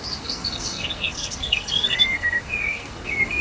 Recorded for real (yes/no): no